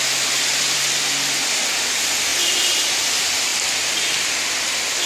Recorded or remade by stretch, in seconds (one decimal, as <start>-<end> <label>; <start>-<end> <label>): 0.0-5.1 recorded